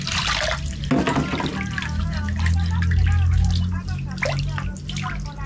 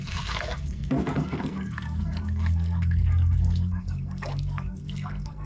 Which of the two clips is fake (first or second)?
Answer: second